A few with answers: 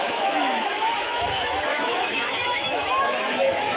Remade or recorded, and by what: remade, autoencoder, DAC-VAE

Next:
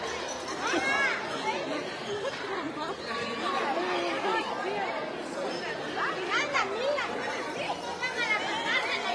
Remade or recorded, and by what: recorded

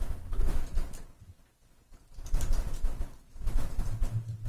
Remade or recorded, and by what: recorded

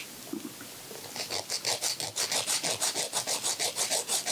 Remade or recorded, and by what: recorded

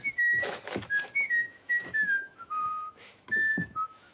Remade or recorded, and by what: remade, autoencoder, DAC-VAE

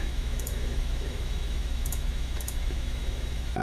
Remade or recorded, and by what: remade, autoencoder, DAC-VAE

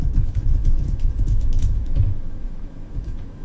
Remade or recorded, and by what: remade, autoencoder, DAC-VAE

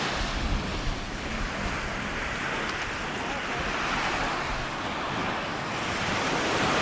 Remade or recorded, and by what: recorded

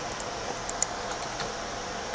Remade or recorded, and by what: recorded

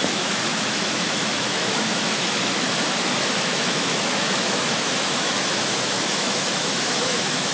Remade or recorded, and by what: remade, autoencoder, DAC-VAE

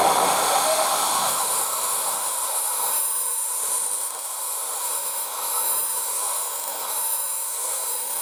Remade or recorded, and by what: remade, autoencoder, DAC-VAE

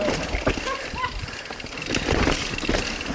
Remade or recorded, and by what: recorded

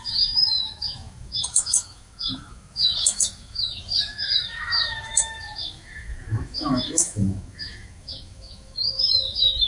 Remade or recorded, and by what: remade, autoencoder, DAC-VAE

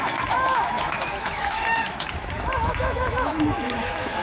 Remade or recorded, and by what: remade, autoencoder, DAC-VAE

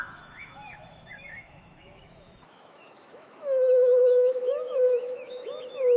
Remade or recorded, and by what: remade, autoencoder, DAC-VAE